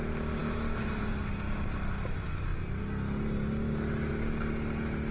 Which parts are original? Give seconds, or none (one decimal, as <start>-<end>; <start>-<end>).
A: 0.0-5.1